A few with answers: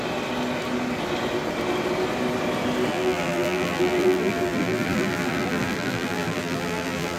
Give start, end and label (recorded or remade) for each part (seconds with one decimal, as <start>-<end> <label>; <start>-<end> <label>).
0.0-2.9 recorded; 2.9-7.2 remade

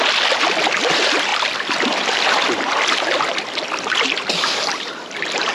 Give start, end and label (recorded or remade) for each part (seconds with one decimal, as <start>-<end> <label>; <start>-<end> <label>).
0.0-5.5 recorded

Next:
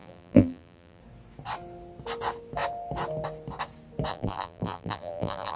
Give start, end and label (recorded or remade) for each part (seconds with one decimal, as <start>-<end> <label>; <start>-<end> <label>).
0.0-1.0 remade; 1.0-4.1 recorded; 4.1-5.6 remade

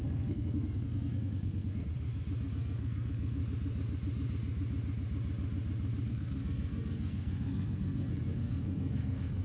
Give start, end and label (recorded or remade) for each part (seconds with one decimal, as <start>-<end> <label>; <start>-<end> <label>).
0.0-1.9 remade; 1.9-2.5 recorded; 2.5-3.4 remade; 3.4-6.1 recorded; 6.1-9.4 remade

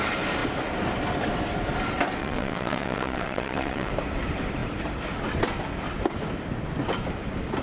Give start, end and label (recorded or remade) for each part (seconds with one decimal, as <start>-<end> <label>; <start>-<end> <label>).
0.0-2.2 recorded; 2.2-3.9 remade; 3.9-7.6 recorded

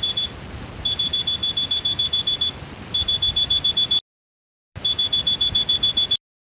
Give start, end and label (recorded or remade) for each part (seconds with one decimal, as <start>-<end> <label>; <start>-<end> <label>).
0.0-6.4 recorded

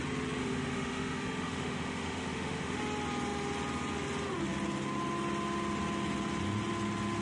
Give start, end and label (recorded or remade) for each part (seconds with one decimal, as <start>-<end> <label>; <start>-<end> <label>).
0.0-0.4 recorded; 0.4-2.8 remade; 2.8-7.2 recorded